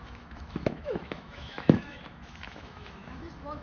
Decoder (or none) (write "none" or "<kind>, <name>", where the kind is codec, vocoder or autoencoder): autoencoder, DAC-VAE